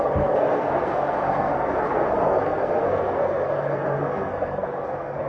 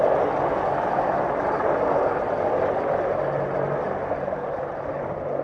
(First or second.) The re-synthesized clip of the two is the first